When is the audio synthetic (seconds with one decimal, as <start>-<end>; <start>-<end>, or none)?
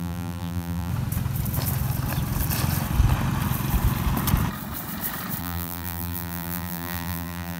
0.0-0.9; 5.4-7.6